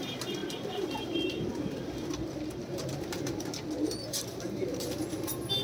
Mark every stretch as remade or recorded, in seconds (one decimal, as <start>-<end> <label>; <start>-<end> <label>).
0.0-1.5 remade; 1.5-4.3 recorded; 4.3-5.6 remade